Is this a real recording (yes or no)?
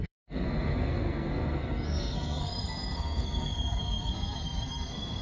no